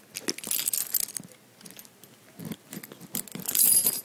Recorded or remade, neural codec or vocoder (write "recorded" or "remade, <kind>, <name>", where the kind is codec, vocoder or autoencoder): recorded